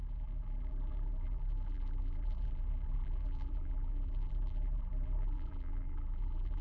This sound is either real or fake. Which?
fake